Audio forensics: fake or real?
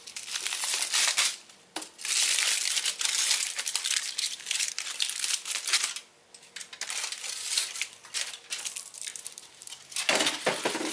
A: real